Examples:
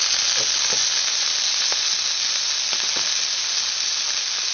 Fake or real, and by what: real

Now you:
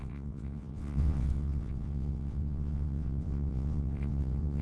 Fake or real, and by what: fake, vocoder, WaveNeXt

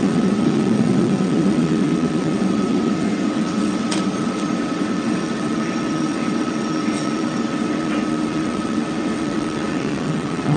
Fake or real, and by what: fake, vocoder, WaveNeXt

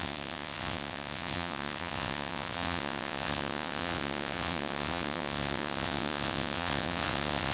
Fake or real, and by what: fake, vocoder, WaveNeXt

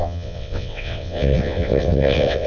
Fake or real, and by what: fake, vocoder, WaveNeXt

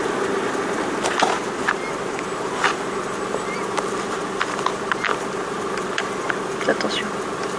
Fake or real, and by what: real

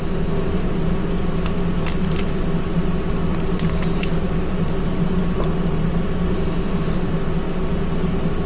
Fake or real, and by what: real